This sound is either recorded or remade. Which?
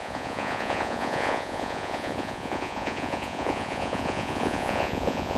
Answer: remade